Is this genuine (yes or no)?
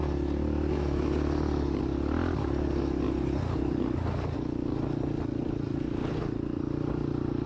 yes